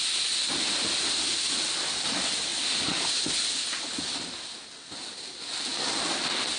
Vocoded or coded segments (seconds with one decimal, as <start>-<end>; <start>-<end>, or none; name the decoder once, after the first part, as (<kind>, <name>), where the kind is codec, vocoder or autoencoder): none